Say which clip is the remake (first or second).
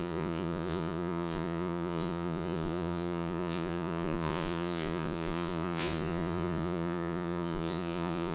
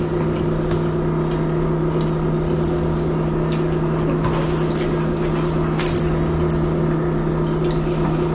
first